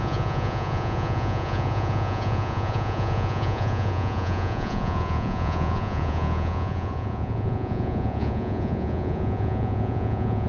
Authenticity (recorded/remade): remade